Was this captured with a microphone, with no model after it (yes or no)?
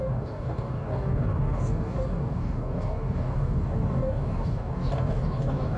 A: no